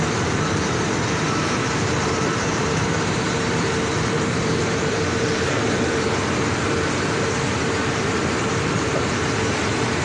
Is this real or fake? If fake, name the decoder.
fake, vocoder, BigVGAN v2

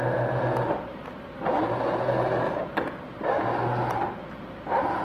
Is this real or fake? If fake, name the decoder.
real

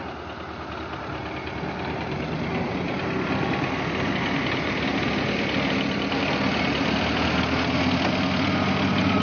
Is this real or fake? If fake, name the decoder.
real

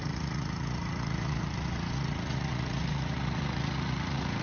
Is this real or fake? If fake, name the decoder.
fake, vocoder, Vocos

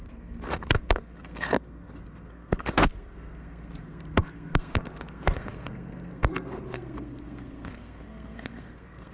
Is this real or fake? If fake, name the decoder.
fake, codec, SNAC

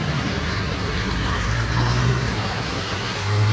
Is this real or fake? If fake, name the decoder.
fake, codec, SNAC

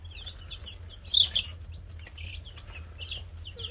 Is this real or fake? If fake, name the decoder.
real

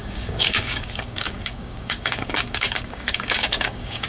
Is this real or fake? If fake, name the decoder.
fake, codec, DAC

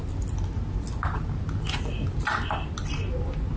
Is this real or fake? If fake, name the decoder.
real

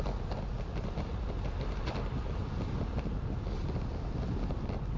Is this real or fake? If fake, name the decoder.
real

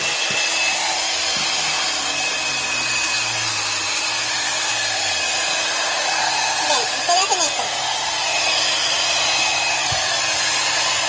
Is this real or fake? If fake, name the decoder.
real